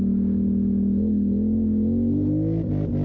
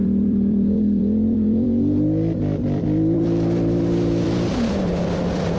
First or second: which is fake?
second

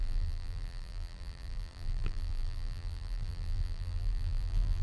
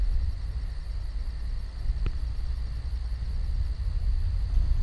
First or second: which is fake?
first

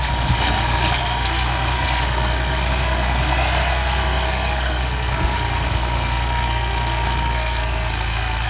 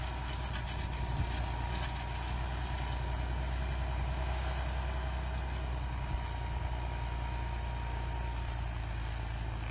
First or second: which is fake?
first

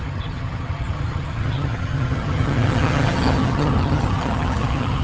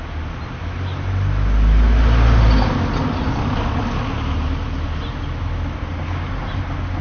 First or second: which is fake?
first